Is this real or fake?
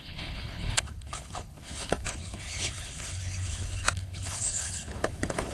fake